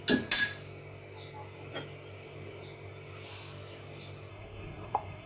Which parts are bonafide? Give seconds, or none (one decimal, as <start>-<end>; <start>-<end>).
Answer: 0.0-4.3